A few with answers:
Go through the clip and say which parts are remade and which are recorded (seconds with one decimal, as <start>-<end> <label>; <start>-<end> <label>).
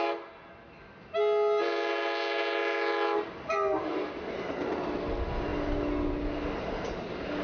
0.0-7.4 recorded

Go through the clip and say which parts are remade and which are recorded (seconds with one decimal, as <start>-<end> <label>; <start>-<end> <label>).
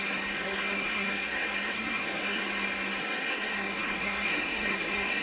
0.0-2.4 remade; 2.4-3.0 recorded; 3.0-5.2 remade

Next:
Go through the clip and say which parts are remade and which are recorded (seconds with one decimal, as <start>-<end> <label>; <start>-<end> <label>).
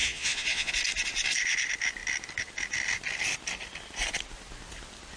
0.0-0.7 remade; 0.7-5.2 recorded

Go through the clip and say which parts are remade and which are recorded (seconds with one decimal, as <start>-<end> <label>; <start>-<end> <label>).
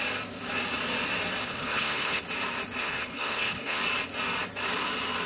0.0-1.4 recorded; 1.4-2.2 remade; 2.2-2.8 recorded; 2.8-3.8 remade; 3.8-5.3 recorded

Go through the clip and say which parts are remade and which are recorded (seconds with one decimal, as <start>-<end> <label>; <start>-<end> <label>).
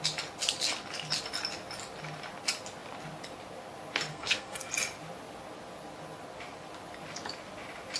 0.0-4.1 recorded; 4.1-4.7 remade; 4.7-8.0 recorded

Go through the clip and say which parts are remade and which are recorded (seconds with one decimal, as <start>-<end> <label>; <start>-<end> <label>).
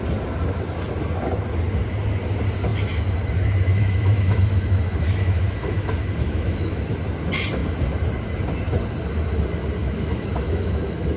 0.0-3.7 recorded; 3.7-6.8 remade; 6.8-9.8 recorded; 9.8-11.2 remade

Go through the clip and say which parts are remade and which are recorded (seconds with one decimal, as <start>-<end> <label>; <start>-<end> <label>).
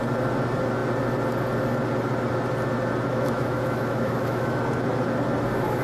0.0-3.1 recorded; 3.1-4.6 remade; 4.6-5.8 recorded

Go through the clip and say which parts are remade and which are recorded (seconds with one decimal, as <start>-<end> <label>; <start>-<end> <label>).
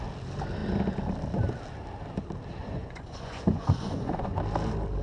0.0-2.6 recorded; 2.6-4.4 remade; 4.4-5.0 recorded